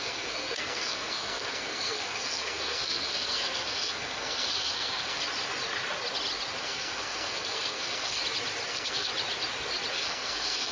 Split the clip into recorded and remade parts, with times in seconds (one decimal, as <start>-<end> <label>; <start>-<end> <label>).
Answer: 0.0-5.2 remade; 5.2-6.6 recorded; 6.6-8.2 remade; 8.2-8.7 recorded; 8.7-9.1 remade; 9.1-9.9 recorded; 9.9-10.7 remade